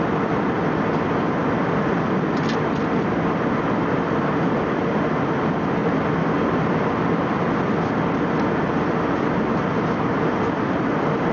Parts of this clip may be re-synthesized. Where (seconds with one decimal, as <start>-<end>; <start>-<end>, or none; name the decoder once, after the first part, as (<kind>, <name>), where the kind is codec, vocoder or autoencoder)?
5.8-6.3 (vocoder, BigVGAN v2)